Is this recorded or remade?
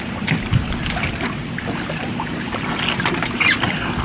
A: recorded